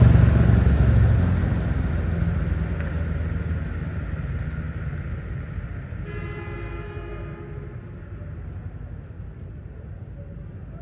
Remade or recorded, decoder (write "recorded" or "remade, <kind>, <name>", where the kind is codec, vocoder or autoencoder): recorded